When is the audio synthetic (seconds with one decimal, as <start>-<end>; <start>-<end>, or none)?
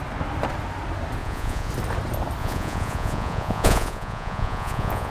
1.2-1.7; 2.4-5.1